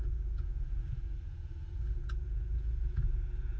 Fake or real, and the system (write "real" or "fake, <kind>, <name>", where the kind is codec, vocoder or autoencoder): fake, vocoder, Vocos